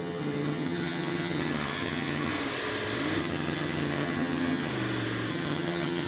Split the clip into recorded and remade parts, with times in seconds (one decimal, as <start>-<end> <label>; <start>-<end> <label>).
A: 0.0-2.3 remade; 2.3-3.2 recorded; 3.2-4.7 remade; 4.7-5.3 recorded; 5.3-6.1 remade